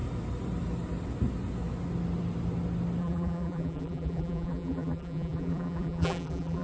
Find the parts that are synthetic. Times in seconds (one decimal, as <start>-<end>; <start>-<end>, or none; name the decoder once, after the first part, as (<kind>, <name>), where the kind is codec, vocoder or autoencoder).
3.0-6.6 (vocoder, BigVGAN v2)